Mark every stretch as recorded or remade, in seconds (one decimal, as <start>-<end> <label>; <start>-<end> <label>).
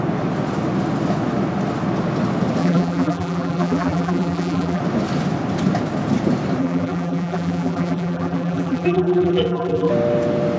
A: 0.0-2.6 recorded; 2.6-4.8 remade; 4.8-6.6 recorded; 6.6-9.9 remade; 9.9-10.6 recorded